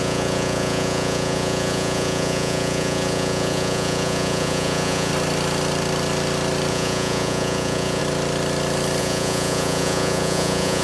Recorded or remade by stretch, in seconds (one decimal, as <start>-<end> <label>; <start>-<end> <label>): 0.0-5.1 remade; 5.1-6.7 recorded; 6.7-8.0 remade; 8.0-9.0 recorded; 9.0-10.8 remade